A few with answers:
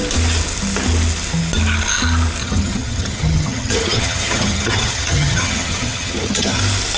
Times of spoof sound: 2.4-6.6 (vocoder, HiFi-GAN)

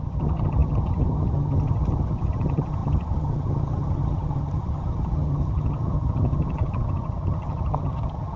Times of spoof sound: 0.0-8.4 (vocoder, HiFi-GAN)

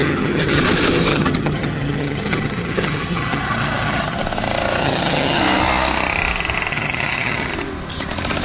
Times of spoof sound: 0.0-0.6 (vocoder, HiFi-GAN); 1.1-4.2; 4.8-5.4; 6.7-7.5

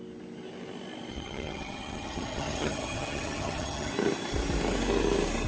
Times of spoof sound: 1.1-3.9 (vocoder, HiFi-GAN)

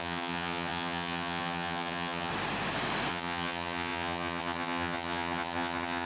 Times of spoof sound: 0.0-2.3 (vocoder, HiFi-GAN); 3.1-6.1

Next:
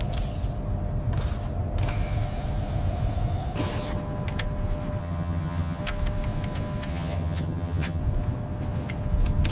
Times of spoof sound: 5.0-5.8 (vocoder, HiFi-GAN); 6.9-8.0